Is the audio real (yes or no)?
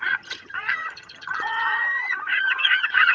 no